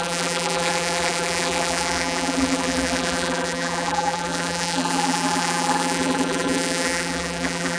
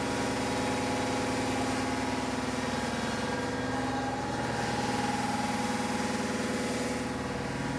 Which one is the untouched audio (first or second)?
second